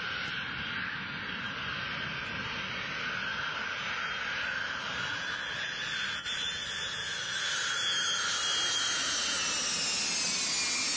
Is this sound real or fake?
real